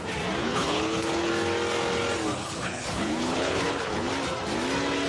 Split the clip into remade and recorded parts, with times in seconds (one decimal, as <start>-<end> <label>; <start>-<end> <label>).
0.0-0.4 recorded; 0.4-1.3 remade; 1.3-2.4 recorded; 2.4-4.1 remade; 4.1-5.1 recorded